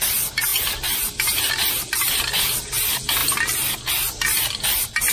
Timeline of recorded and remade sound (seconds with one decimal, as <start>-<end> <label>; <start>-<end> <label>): 0.0-5.1 recorded